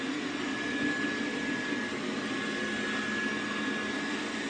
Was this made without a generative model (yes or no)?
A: yes